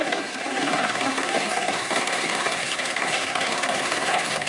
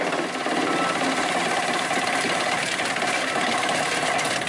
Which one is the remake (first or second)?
first